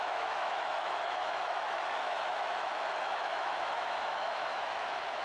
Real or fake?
fake